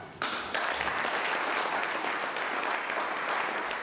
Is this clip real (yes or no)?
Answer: yes